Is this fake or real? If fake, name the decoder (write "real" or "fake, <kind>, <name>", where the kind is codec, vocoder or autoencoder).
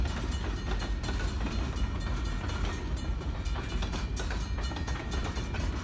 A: real